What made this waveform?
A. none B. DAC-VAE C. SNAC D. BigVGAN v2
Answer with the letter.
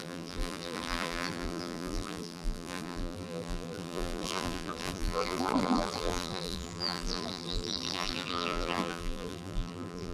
D